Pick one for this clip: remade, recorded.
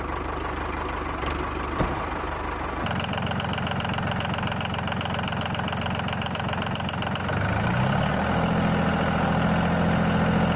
recorded